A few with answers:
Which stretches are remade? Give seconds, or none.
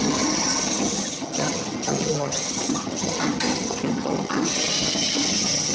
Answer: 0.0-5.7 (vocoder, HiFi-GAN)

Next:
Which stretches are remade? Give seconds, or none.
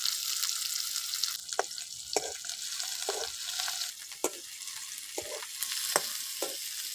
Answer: none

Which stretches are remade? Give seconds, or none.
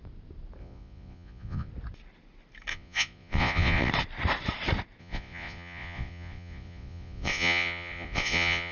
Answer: 0.6-1.7 (vocoder, Vocos); 2.7-3.9; 5.0-8.7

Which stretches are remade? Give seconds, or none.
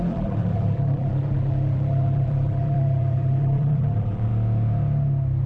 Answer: 0.0-4.3 (vocoder, BigVGAN v2)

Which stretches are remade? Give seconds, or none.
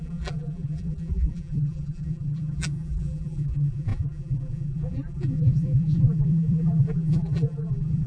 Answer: 0.0-8.1 (vocoder, BigVGAN v2)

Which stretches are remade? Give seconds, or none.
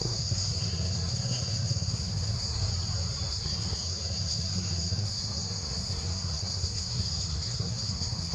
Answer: 0.0-2.7 (codec, SNAC); 3.3-8.3